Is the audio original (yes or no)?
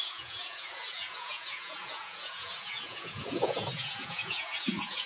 no